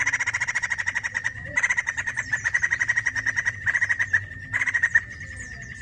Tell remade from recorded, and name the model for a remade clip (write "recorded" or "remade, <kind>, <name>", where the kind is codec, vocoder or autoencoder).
recorded